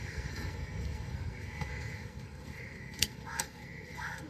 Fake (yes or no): yes